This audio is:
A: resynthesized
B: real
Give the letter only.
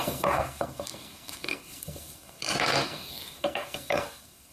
A